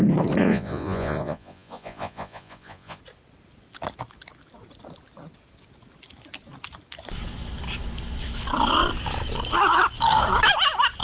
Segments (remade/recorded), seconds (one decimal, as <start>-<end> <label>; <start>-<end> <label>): 0.0-0.4 recorded; 0.4-3.0 remade; 3.0-11.0 recorded